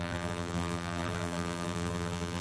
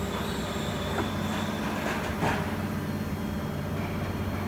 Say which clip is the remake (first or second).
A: first